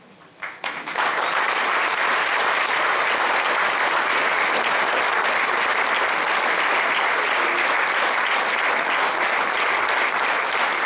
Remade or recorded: recorded